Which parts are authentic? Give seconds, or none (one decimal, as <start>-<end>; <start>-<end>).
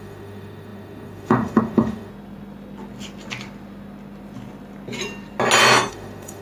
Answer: 2.1-5.9